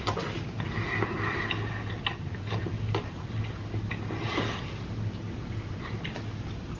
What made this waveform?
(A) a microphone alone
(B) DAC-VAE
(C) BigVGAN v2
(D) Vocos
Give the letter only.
A